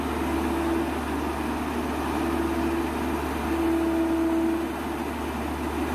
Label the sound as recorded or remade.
recorded